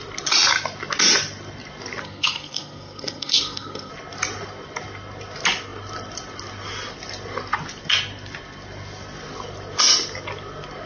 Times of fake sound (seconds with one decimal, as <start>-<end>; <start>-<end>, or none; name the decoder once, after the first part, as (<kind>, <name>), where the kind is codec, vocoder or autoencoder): 2.0-3.9 (codec, SNAC)